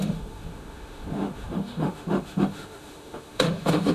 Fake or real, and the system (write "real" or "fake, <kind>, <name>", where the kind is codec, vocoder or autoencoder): fake, autoencoder, DAC-VAE